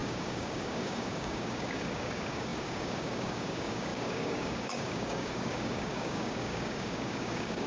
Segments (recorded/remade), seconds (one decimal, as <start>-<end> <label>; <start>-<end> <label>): 0.0-7.7 remade